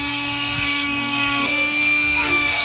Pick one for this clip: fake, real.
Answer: fake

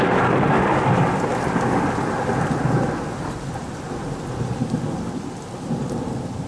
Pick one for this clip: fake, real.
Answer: real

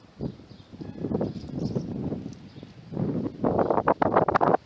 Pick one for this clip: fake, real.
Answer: real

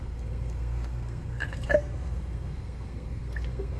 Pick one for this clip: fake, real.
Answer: fake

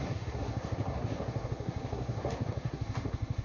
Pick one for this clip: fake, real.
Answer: fake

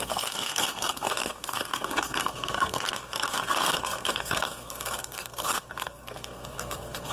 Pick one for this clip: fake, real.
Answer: fake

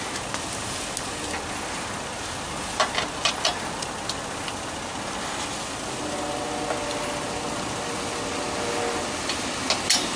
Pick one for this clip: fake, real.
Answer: real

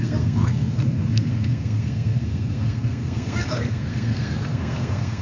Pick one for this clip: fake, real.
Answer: fake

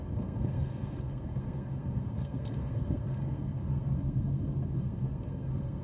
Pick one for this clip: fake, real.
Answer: fake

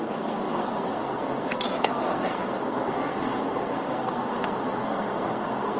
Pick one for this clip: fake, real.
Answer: fake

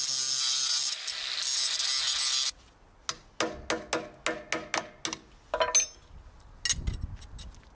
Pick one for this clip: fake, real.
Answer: real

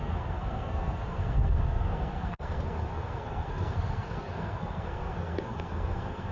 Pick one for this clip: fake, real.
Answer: fake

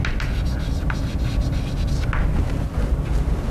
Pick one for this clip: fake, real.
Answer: real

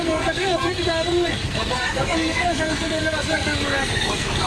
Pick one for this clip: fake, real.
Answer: fake